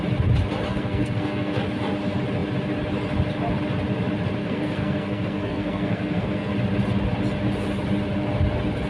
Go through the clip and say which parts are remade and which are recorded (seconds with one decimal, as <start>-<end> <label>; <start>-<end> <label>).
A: 0.0-0.7 recorded; 0.7-1.6 remade; 1.6-4.4 recorded; 4.4-6.5 remade; 6.5-8.9 recorded